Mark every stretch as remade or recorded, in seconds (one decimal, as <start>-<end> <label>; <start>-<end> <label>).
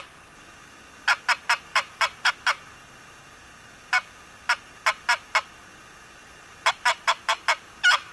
0.0-1.7 recorded; 1.7-2.3 remade; 2.3-6.2 recorded; 6.2-6.7 remade; 6.7-8.1 recorded